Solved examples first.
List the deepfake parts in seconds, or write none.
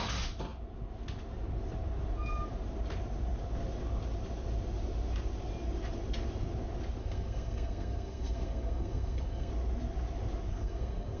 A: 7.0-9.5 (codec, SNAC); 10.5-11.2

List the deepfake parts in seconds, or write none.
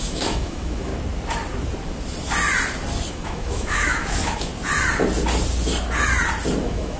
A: 0.0-0.9 (autoencoder, DAC-VAE); 3.1-4.5; 6.6-7.0